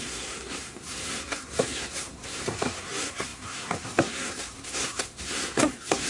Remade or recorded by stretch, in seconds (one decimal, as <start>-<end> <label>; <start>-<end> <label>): 0.0-6.1 remade